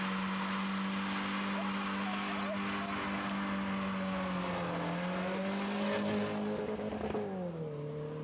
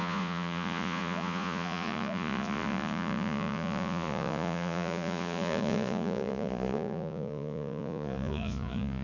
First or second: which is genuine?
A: first